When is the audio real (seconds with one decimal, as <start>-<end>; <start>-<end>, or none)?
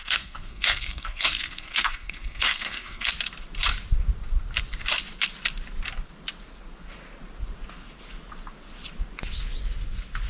3.1-10.3